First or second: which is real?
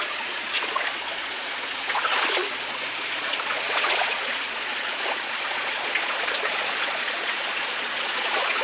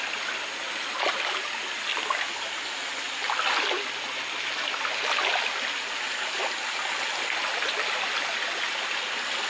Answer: second